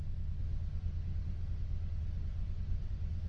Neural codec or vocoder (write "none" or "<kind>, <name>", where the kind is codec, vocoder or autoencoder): none